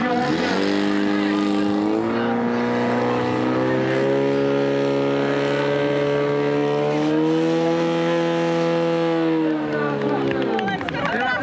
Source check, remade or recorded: recorded